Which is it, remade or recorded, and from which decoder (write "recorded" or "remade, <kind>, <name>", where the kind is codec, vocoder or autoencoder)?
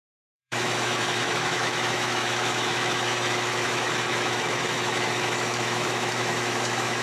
remade, autoencoder, DAC-VAE